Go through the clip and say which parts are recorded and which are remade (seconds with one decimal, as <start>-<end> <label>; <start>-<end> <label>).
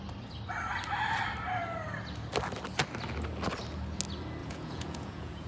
0.0-4.4 recorded; 4.4-5.5 remade